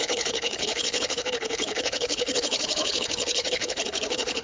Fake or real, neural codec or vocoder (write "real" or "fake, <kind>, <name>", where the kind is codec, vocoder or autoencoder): fake, codec, HILCodec